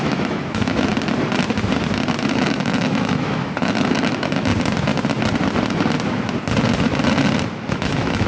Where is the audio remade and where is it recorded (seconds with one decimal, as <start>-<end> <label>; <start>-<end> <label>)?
0.0-0.9 remade; 0.9-2.3 recorded; 2.3-4.5 remade; 4.5-7.7 recorded; 7.7-8.3 remade